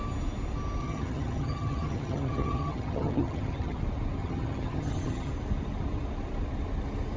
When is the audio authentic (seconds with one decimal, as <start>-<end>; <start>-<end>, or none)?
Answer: 0.0-0.8; 3.8-4.2; 5.3-7.2

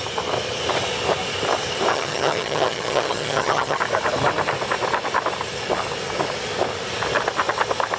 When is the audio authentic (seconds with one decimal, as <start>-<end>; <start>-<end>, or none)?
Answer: 0.0-1.9; 3.8-8.0

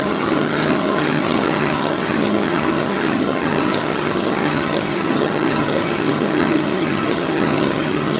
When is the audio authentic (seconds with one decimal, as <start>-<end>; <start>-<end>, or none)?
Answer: none